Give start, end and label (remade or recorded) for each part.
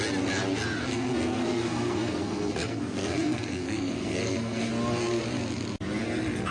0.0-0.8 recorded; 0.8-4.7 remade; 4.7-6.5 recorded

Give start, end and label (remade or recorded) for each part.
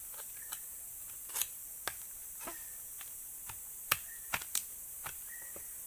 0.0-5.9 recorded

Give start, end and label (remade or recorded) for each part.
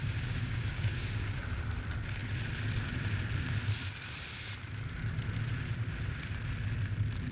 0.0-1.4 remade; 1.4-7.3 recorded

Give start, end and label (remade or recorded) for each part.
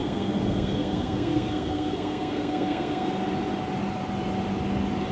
0.0-3.1 remade; 3.1-5.1 recorded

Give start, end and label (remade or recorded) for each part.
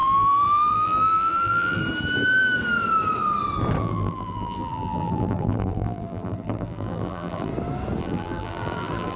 0.0-1.8 remade; 1.8-3.8 recorded; 3.8-7.5 remade; 7.5-8.0 recorded; 8.0-9.2 remade